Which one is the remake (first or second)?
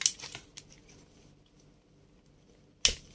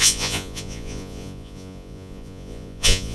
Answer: second